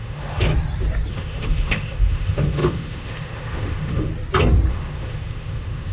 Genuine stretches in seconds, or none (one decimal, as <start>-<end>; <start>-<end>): 0.5-1.1; 4.1-4.7